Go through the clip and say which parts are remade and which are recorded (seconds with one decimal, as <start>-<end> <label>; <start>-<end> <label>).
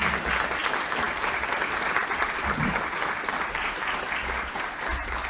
0.0-5.3 recorded